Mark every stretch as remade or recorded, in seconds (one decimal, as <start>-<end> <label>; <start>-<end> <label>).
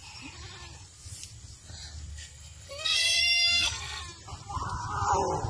0.0-2.1 recorded; 2.1-4.0 remade; 4.0-5.5 recorded